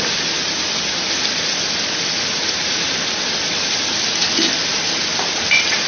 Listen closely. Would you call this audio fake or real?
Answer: real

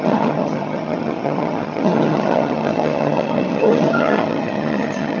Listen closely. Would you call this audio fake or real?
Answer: fake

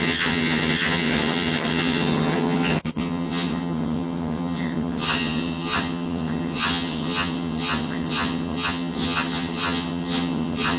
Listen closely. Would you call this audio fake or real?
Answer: fake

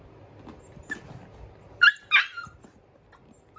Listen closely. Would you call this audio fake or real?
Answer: real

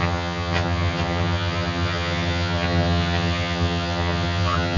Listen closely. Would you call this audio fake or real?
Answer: fake